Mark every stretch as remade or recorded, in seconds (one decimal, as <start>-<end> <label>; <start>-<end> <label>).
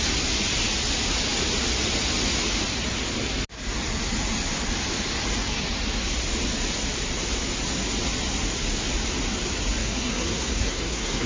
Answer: 0.0-9.8 recorded; 9.8-11.3 remade